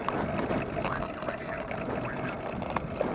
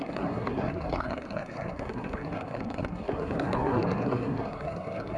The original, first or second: first